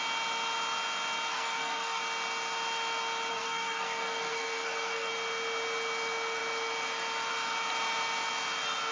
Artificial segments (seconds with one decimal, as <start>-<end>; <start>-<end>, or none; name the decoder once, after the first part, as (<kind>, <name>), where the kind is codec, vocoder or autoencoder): 1.3-2.0 (codec, SNAC); 3.3-5.1